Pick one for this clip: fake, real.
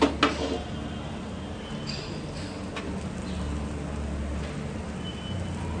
real